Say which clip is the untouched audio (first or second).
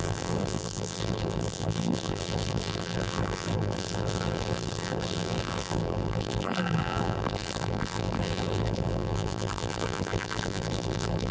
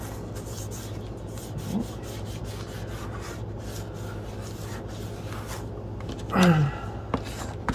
second